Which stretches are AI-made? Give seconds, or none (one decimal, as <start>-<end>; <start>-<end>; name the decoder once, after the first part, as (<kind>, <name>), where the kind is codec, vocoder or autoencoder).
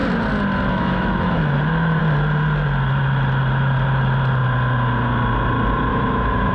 0.7-2.0 (autoencoder, DAC-VAE); 5.9-6.5